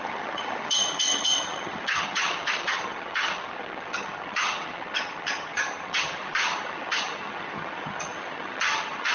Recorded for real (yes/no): no